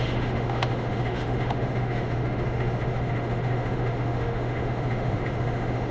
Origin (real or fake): fake